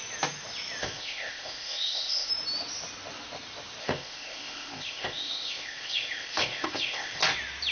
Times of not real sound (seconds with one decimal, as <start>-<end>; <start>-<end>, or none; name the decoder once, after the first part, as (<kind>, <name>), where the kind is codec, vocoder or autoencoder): 0.8-2.3 (codec, ZipCodec); 3.8-7.2